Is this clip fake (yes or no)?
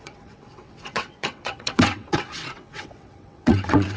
yes